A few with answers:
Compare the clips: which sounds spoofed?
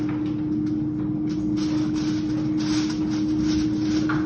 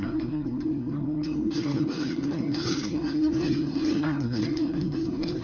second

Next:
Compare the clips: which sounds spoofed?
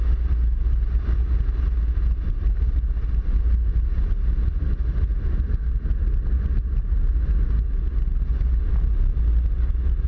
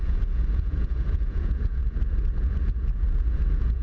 second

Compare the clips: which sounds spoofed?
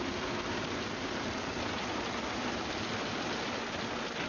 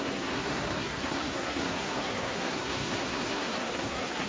second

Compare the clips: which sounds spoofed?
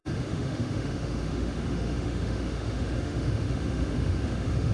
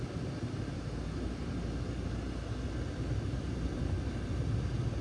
first